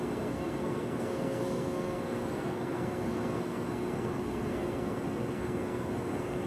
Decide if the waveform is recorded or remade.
remade